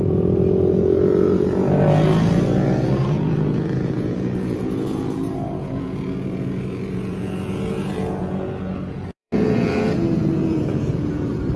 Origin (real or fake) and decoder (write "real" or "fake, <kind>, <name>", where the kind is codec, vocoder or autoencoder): fake, vocoder, Vocos